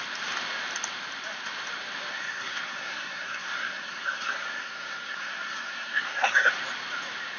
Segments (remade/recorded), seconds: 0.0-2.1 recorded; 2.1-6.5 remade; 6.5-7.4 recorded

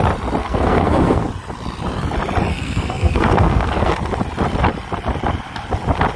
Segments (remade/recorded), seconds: 0.0-0.4 recorded; 0.4-1.3 remade; 1.3-2.5 recorded; 2.5-3.9 remade; 3.9-6.2 recorded

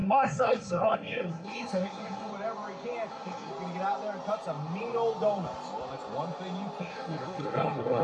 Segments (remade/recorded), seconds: 0.0-2.3 remade; 2.3-3.1 recorded; 3.1-3.5 remade; 3.5-6.8 recorded; 6.8-8.0 remade